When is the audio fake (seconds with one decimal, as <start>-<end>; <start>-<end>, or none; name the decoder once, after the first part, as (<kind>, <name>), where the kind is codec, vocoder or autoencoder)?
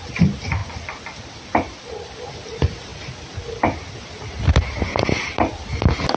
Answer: 0.6-2.3 (vocoder, BigVGAN v2)